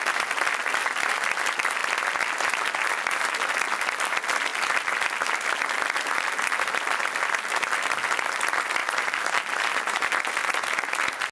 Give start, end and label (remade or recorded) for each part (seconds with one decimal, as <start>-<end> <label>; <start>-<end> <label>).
0.0-8.8 recorded; 8.8-10.0 remade; 10.0-11.3 recorded